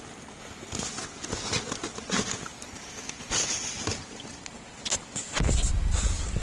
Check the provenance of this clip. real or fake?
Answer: real